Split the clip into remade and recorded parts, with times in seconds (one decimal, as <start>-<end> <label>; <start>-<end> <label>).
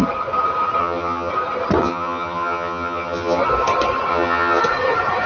0.0-0.8 recorded; 0.8-1.3 remade; 1.3-1.8 recorded; 1.8-3.4 remade; 3.4-4.1 recorded; 4.1-4.6 remade; 4.6-5.3 recorded